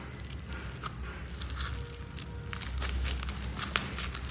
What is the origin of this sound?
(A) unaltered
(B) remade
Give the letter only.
A